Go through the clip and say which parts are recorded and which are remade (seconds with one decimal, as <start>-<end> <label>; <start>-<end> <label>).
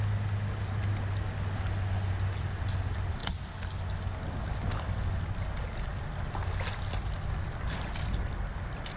0.0-9.0 recorded